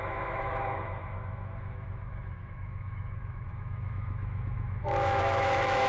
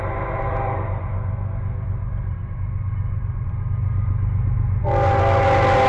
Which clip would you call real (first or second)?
second